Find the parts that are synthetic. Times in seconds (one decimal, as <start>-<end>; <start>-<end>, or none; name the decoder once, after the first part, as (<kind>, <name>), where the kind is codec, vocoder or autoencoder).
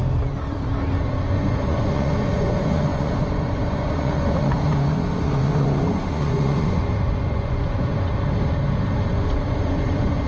1.1-8.1 (vocoder, Vocos); 9.1-10.3